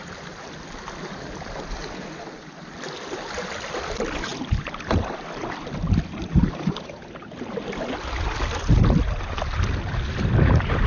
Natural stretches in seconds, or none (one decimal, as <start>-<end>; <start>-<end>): 0.0-4.3; 5.7-10.9